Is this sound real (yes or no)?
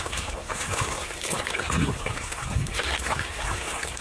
no